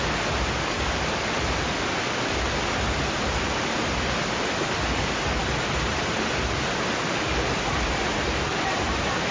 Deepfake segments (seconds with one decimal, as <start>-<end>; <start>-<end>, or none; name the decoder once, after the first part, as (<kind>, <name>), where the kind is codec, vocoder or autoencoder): none